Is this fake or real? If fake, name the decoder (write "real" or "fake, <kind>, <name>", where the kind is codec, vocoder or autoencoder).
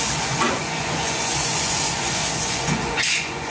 fake, vocoder, Vocos